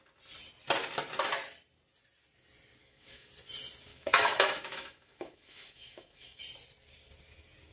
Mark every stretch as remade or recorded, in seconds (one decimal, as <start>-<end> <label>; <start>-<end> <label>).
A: 0.0-2.8 recorded; 2.8-3.3 remade; 3.3-3.9 recorded; 3.9-6.4 remade; 6.4-7.7 recorded